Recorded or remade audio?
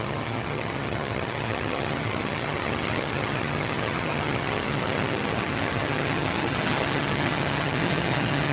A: remade